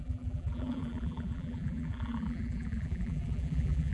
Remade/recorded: remade